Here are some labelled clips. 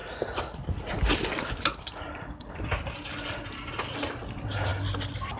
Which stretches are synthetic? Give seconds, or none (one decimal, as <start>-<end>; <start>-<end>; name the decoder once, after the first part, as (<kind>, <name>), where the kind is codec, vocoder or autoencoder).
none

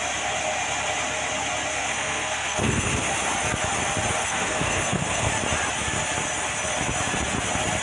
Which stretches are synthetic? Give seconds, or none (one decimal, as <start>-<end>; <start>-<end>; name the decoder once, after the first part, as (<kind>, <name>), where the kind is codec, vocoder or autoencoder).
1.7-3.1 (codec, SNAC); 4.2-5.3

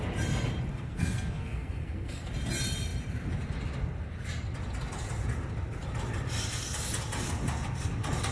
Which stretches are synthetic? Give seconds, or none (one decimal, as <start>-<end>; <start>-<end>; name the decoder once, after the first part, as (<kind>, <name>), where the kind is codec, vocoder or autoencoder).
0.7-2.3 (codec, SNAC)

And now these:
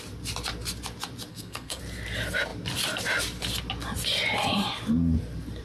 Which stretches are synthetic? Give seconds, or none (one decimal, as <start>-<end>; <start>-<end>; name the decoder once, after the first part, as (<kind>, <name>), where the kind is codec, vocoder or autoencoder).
1.3-1.8 (codec, SNAC)

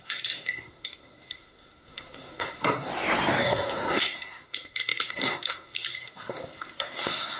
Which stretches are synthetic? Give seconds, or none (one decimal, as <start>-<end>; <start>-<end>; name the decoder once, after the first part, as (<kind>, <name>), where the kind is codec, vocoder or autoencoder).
0.0-2.9 (codec, SNAC); 3.4-7.4

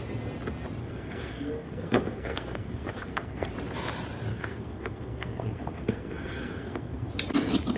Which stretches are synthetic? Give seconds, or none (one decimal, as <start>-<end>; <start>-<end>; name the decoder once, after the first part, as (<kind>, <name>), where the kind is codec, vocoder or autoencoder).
0.8-3.5 (codec, SNAC); 4.3-7.1

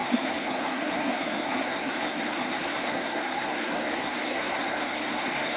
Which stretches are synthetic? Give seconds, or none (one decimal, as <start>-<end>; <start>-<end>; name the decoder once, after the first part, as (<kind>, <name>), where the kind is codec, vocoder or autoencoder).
0.0-5.6 (codec, SNAC)

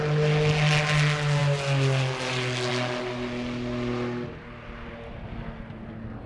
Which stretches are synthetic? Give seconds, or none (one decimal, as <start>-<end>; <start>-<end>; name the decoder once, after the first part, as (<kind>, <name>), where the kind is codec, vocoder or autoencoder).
none